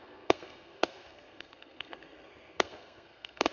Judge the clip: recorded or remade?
remade